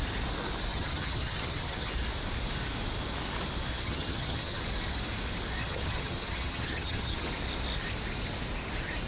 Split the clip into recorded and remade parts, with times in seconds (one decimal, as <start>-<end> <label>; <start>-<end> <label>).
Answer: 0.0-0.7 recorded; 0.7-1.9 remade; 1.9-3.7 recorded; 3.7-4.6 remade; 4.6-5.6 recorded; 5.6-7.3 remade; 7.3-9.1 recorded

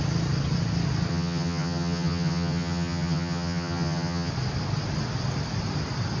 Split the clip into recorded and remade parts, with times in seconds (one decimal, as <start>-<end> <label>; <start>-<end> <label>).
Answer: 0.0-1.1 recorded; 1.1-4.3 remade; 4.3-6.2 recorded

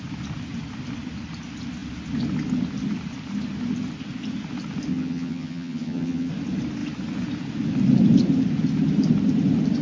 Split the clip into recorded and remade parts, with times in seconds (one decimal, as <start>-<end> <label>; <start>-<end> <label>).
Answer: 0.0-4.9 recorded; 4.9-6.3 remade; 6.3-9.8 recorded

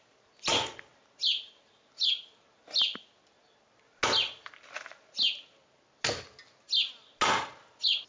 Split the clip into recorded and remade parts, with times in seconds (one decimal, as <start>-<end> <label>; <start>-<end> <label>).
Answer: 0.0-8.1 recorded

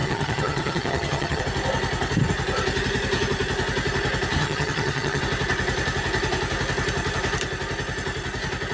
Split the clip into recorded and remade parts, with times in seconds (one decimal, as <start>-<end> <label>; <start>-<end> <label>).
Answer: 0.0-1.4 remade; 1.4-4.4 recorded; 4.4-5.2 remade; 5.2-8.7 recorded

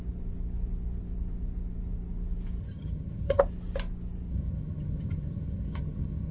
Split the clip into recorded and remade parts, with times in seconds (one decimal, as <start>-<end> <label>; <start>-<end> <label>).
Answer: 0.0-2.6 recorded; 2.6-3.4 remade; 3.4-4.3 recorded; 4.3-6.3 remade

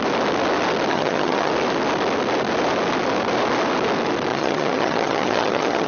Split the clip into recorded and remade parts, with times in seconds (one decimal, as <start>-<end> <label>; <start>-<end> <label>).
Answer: 0.0-0.9 recorded; 0.9-1.5 remade; 1.5-4.3 recorded; 4.3-5.9 remade